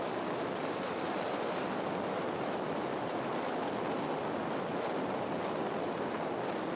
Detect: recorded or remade recorded